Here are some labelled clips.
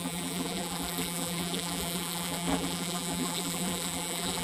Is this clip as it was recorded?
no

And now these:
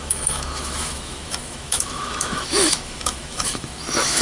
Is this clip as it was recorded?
no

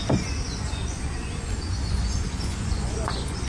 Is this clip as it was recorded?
no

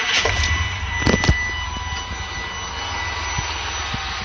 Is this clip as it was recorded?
yes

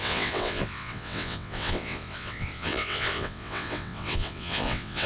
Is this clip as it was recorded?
no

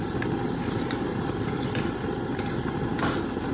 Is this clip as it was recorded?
yes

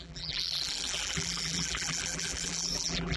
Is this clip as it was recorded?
no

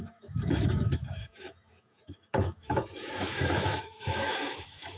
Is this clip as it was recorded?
no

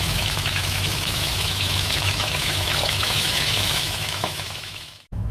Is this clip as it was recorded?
no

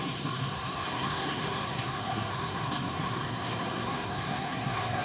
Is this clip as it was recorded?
no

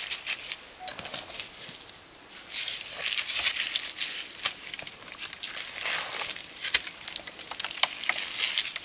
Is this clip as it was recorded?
yes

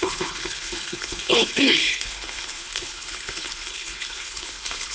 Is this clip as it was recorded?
no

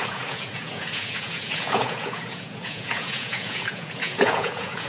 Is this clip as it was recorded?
no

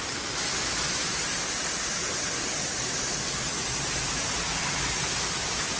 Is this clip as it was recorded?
yes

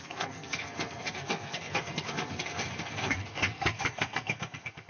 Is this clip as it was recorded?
no